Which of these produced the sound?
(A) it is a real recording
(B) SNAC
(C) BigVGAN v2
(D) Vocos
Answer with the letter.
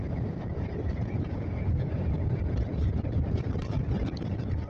D